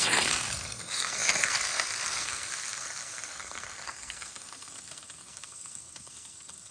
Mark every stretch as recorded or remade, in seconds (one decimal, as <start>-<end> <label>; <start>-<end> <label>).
0.0-6.7 remade